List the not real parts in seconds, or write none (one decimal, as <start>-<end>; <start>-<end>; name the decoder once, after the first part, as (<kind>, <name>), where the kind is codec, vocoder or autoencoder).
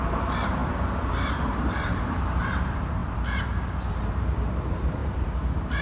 0.0-3.0 (vocoder, BigVGAN v2); 3.9-5.8